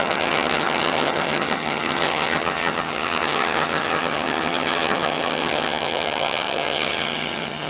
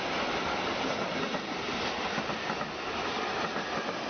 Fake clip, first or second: first